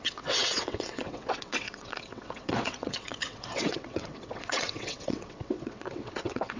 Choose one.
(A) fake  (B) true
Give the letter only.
A